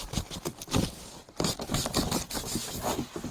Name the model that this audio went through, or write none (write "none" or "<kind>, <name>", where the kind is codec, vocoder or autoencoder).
none